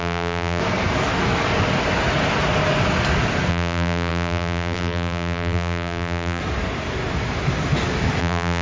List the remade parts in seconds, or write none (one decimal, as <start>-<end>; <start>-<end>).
0.0-0.6; 3.5-6.4; 8.2-8.6